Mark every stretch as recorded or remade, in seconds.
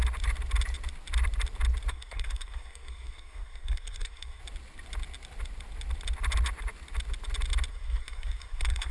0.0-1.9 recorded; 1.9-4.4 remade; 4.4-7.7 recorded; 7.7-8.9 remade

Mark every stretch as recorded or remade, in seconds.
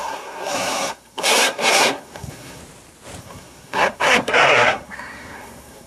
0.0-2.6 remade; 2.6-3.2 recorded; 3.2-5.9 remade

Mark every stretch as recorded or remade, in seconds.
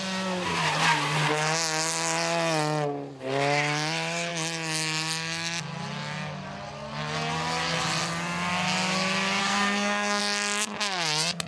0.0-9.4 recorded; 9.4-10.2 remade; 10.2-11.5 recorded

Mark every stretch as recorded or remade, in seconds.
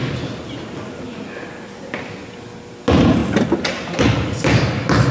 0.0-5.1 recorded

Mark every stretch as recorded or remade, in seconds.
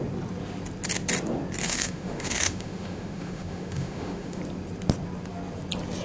0.0-1.6 recorded; 1.6-4.4 remade; 4.4-6.0 recorded